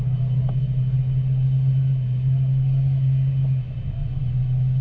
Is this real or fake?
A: real